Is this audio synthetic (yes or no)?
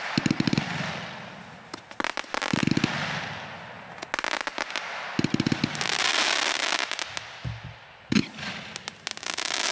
no